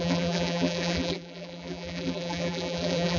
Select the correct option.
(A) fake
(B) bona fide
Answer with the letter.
A